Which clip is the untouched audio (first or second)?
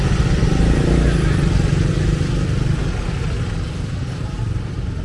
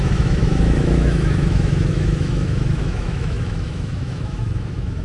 first